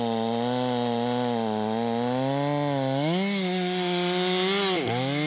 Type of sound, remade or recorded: recorded